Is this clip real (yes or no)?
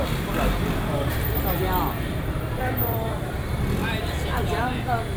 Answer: no